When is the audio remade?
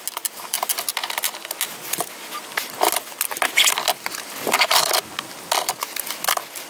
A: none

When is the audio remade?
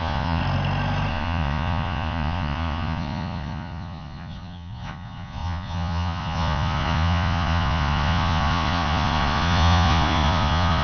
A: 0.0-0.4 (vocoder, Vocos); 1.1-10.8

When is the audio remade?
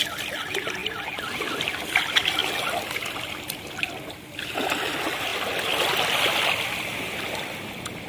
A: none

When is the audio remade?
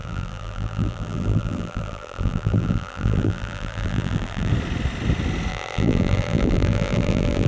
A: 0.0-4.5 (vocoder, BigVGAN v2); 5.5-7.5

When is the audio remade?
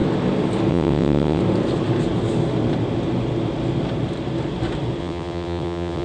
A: 0.7-1.4 (vocoder, WaveNeXt); 5.0-6.0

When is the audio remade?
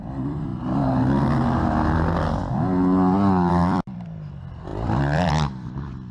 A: 0.0-0.5 (vocoder, BigVGAN v2); 1.0-2.4; 3.5-6.1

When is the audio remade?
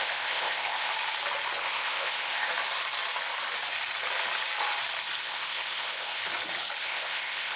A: 0.0-0.9 (codec, ZipCodec); 1.6-2.5; 5.2-6.2; 6.8-7.6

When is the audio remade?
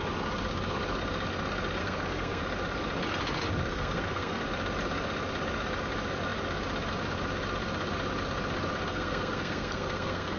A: 1.8-2.4 (codec, SNAC); 3.7-4.4; 8.9-10.4